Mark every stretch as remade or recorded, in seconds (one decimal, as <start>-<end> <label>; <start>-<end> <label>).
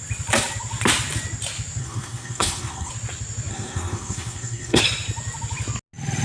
0.0-1.8 recorded; 1.8-2.9 remade; 2.9-3.5 recorded; 3.5-4.8 remade; 4.8-6.2 recorded